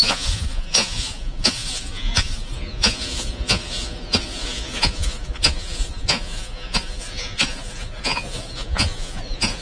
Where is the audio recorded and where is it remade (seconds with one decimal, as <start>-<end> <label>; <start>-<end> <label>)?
0.0-9.6 remade